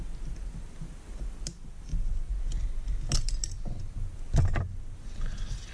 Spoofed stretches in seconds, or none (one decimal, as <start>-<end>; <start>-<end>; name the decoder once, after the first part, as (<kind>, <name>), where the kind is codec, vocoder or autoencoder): none